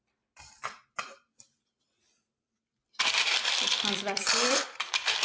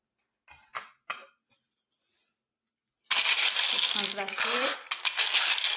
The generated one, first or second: first